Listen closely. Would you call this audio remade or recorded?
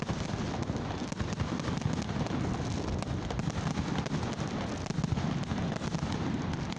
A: recorded